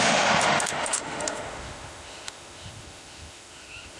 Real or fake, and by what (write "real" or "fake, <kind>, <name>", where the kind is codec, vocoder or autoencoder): fake, autoencoder, DAC-VAE